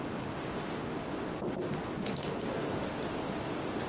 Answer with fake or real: real